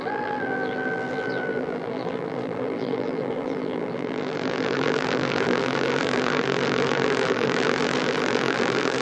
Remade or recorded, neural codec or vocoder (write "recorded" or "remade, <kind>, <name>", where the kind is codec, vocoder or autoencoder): remade, vocoder, BigVGAN v2